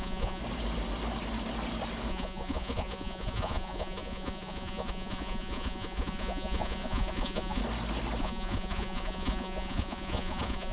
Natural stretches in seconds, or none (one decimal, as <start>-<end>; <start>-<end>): 0.4-2.1; 7.6-8.2